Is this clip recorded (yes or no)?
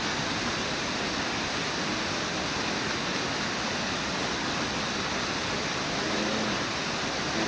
yes